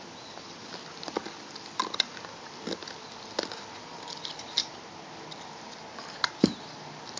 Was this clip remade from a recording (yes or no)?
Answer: no